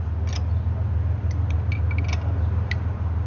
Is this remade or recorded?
recorded